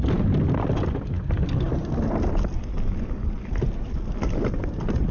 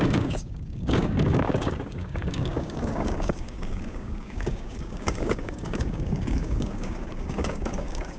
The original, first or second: first